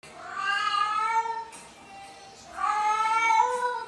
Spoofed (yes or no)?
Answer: no